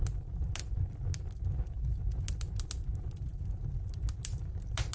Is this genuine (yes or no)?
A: yes